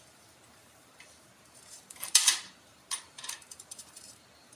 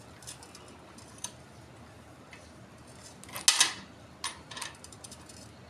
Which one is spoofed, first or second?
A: first